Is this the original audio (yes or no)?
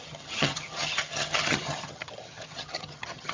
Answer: no